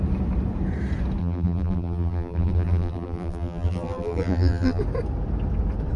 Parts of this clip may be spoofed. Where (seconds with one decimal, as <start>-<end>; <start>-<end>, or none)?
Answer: 1.2-4.8